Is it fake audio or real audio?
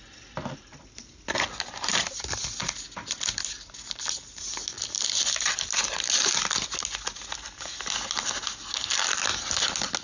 real